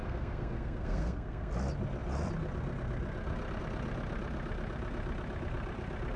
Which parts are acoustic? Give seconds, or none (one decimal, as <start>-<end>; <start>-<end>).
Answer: 1.5-6.2